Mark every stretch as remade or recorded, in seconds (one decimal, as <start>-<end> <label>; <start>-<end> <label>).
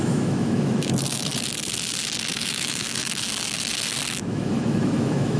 0.0-1.3 remade; 1.3-2.3 recorded; 2.3-3.0 remade; 3.0-4.2 recorded; 4.2-5.4 remade